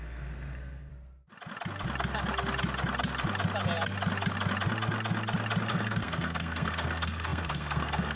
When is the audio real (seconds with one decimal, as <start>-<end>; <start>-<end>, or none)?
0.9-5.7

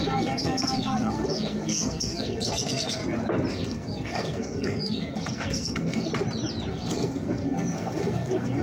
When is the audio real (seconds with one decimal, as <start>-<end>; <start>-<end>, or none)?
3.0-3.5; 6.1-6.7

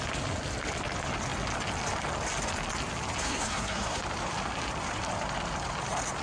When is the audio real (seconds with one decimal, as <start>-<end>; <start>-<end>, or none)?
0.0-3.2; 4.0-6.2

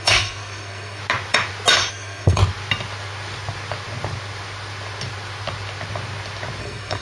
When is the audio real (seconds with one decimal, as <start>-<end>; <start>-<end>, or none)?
1.0-1.9; 2.4-6.6

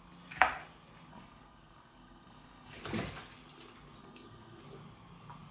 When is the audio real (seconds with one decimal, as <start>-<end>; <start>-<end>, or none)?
0.0-1.1; 2.8-4.0; 4.6-5.5